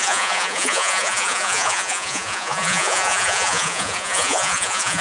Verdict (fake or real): fake